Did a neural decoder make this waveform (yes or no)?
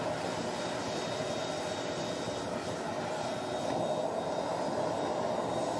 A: no